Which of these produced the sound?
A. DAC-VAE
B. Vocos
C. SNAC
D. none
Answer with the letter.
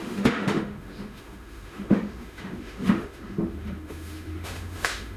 A